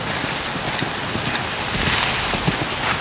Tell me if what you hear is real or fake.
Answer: real